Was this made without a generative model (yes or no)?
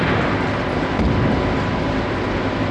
yes